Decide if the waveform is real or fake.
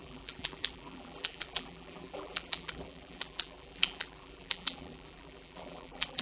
fake